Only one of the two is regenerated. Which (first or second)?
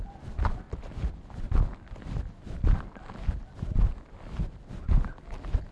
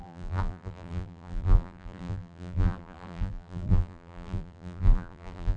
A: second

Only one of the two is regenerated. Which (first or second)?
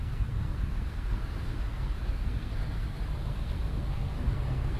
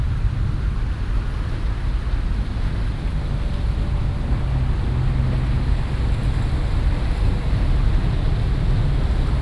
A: first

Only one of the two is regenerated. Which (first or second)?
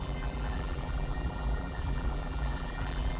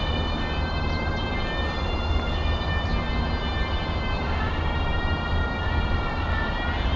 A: first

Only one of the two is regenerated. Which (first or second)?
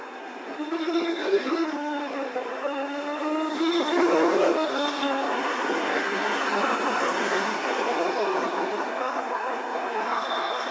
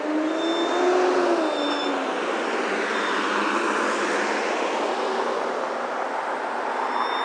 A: first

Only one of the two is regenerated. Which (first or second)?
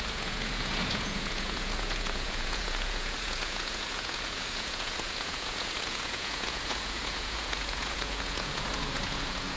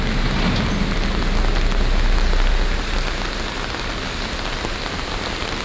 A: first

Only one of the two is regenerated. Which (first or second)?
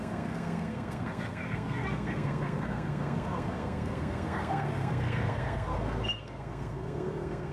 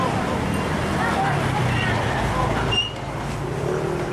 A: first